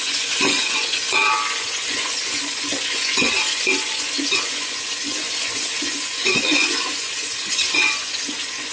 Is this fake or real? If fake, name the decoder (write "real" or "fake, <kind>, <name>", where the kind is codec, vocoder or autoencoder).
fake, vocoder, Vocos